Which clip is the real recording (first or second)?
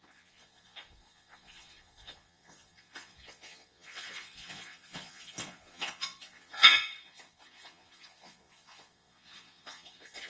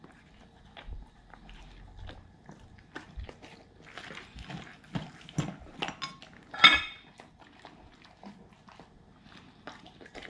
second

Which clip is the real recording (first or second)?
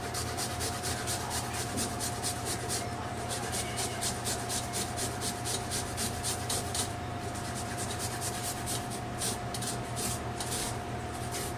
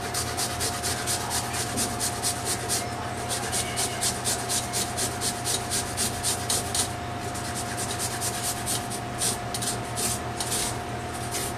second